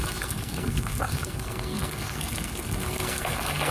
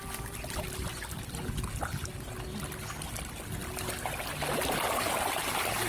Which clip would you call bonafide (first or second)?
second